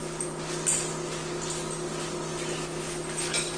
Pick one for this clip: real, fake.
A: real